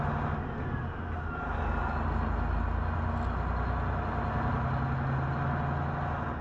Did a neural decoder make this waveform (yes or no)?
no